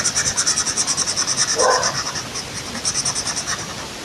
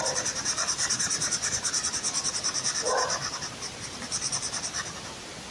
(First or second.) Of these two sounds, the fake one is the second